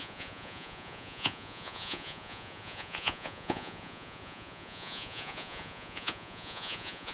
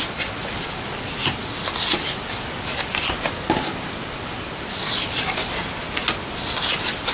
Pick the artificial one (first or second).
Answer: first